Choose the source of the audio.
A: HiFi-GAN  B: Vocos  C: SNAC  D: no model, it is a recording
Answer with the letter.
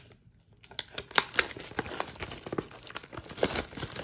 D